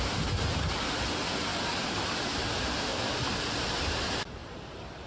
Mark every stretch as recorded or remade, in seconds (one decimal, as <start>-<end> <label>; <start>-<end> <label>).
0.0-1.5 recorded; 1.5-2.4 remade; 2.4-2.9 recorded; 2.9-3.5 remade; 3.5-4.4 recorded; 4.4-5.1 remade